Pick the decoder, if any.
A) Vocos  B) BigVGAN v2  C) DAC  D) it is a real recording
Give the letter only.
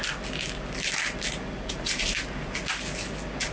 D